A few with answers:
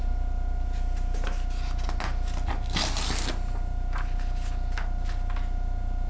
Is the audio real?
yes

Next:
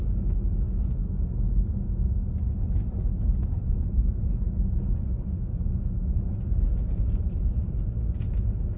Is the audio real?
yes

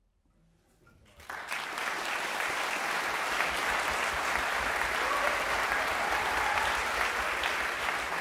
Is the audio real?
yes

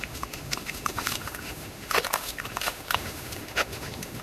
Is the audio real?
no